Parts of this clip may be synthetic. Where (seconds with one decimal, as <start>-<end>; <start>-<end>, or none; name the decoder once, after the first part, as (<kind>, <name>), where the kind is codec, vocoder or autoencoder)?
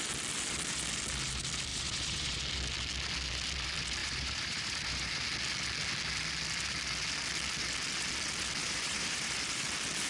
1.7-2.4 (vocoder, BigVGAN v2); 4.0-5.2; 8.6-9.6